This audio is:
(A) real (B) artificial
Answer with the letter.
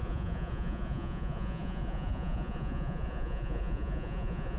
B